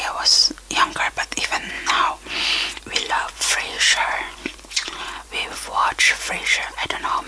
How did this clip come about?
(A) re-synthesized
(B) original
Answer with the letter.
A